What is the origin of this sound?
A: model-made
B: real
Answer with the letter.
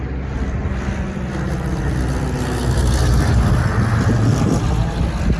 B